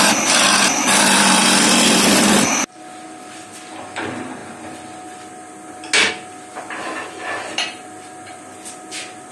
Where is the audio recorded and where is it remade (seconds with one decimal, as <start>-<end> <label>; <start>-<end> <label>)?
0.0-9.3 recorded